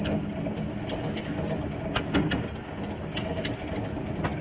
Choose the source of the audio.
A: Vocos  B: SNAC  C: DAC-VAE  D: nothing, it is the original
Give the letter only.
D